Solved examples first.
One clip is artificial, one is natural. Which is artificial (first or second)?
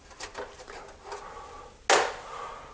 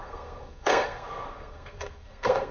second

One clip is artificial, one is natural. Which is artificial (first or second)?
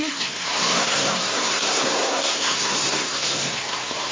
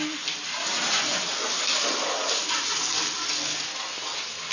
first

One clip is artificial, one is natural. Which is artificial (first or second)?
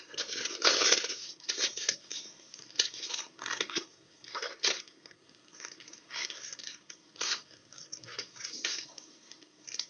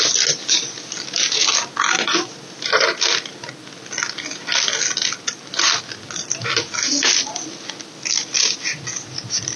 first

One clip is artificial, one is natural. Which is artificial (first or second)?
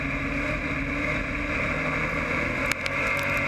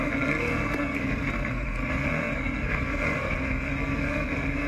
second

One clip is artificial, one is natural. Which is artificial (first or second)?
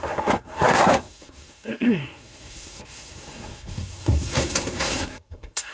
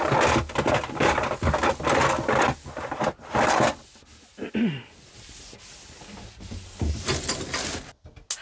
first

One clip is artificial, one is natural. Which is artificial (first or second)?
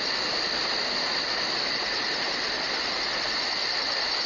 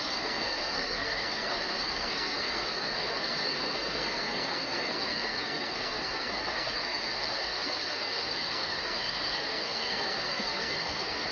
second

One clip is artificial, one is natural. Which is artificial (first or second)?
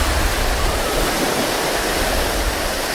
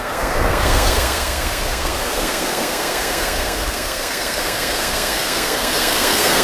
second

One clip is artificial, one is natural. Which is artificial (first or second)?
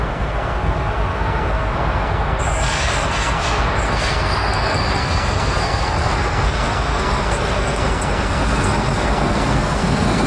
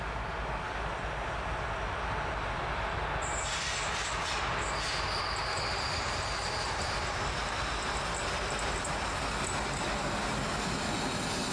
first